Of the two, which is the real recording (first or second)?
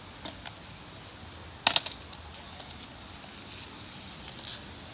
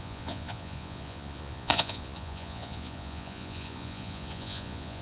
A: first